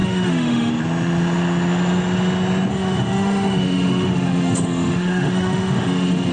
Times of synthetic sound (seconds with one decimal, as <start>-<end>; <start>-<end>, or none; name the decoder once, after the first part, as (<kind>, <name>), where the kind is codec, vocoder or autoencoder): 0.0-0.7 (autoencoder, DAC-VAE); 2.7-6.3